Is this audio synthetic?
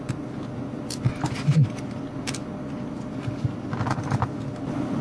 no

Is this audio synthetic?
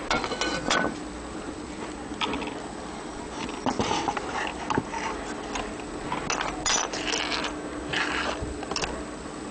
no